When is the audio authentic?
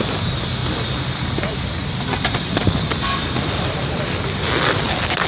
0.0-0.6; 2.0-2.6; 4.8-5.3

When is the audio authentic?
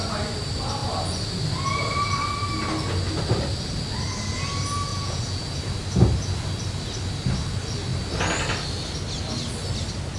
0.0-4.9; 5.6-10.2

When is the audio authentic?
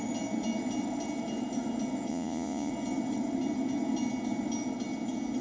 0.0-2.1; 2.7-5.4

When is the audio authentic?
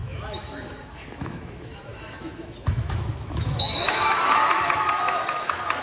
none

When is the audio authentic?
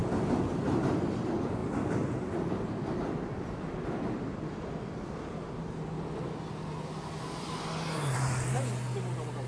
0.0-9.5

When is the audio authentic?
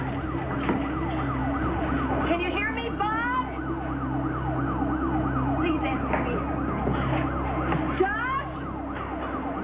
0.0-9.6